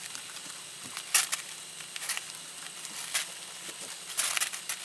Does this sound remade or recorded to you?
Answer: recorded